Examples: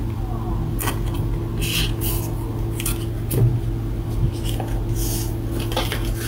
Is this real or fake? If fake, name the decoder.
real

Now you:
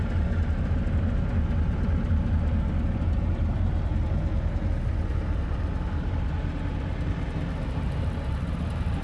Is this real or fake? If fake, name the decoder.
real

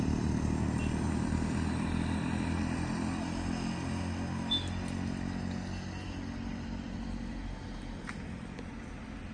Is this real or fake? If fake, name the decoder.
real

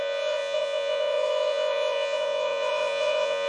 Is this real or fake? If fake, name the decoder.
fake, vocoder, Vocos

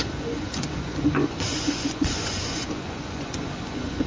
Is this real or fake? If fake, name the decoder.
fake, vocoder, Vocos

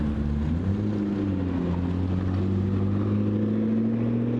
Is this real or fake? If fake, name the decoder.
real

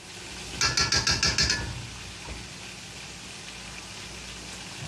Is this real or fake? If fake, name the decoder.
real